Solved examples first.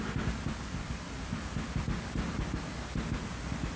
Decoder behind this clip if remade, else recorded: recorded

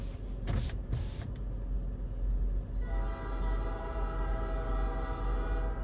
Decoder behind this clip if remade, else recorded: recorded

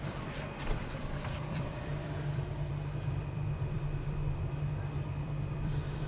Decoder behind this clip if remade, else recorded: remade, vocoder, BigVGAN v2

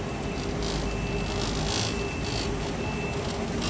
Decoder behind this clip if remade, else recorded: recorded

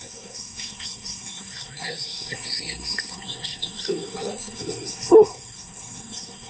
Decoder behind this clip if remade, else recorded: remade, codec, SNAC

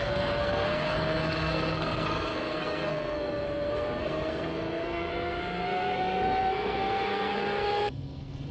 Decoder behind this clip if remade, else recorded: remade, codec, SNAC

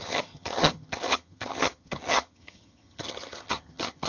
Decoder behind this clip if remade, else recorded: remade, vocoder, HiFi-GAN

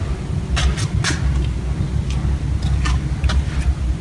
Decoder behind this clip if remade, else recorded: recorded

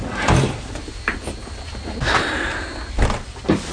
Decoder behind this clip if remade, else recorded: recorded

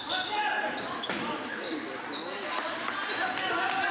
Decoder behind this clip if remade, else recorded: recorded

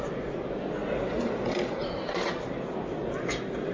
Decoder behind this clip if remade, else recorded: recorded